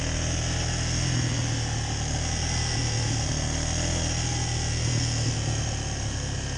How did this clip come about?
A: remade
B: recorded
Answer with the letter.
B